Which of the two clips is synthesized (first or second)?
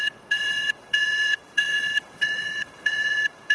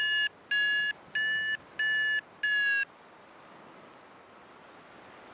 first